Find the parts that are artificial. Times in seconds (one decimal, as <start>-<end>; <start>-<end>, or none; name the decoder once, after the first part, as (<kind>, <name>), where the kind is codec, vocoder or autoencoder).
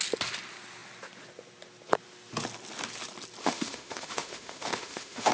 3.4-5.3 (autoencoder, DAC-VAE)